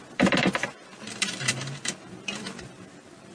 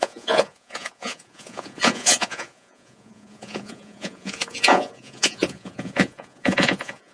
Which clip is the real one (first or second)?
first